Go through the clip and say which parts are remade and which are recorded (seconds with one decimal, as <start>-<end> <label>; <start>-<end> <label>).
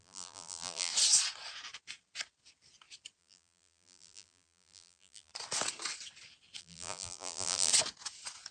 0.0-0.9 remade; 0.9-3.2 recorded; 3.2-5.3 remade; 5.3-6.6 recorded; 6.6-7.7 remade; 7.7-8.5 recorded